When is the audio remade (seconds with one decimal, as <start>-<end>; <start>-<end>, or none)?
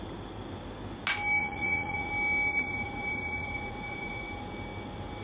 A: 1.4-2.1; 2.5-4.4